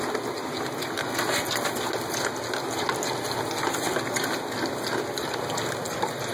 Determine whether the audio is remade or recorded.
recorded